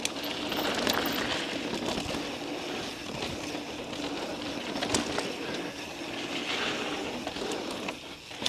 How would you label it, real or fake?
real